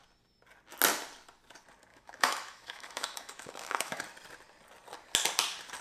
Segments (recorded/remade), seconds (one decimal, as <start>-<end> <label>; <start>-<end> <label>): 0.0-1.9 recorded; 1.9-4.0 remade; 4.0-5.8 recorded